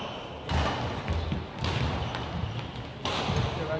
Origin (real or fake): real